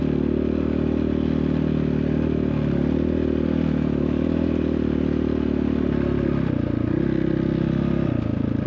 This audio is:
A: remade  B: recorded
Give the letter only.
B